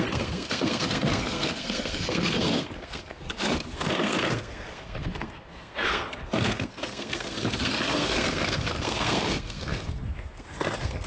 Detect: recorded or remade remade